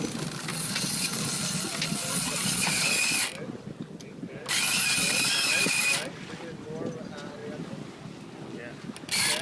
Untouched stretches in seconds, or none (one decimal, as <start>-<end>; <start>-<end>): 0.0-0.5; 1.1-2.1; 3.0-9.4